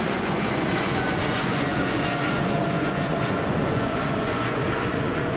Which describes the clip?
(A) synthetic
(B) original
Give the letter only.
A